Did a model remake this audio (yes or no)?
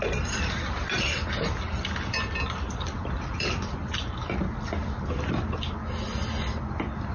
no